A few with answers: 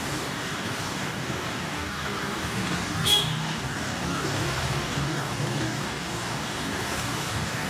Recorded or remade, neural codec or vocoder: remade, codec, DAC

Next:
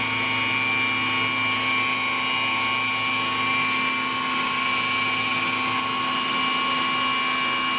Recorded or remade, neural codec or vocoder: recorded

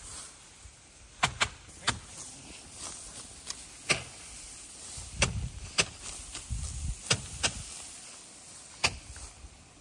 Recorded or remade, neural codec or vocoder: recorded